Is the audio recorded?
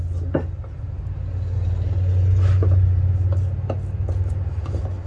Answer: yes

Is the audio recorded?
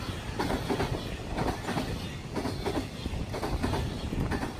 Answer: yes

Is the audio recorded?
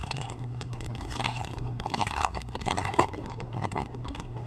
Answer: no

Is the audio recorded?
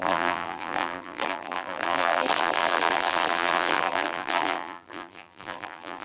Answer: no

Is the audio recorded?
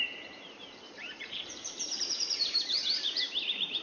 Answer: no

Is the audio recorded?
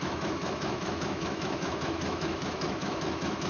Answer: no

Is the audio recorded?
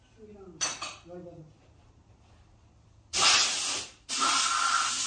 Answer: yes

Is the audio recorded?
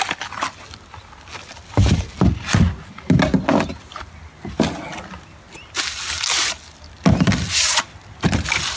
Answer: yes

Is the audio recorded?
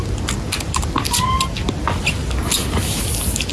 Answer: yes